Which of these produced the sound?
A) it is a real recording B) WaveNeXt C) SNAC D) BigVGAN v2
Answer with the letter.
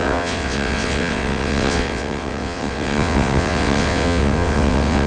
B